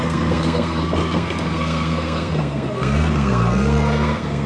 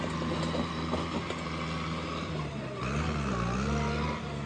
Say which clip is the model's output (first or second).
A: first